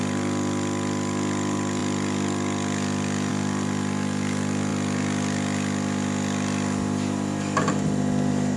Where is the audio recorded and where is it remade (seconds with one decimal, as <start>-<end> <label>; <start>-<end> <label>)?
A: 0.0-8.6 recorded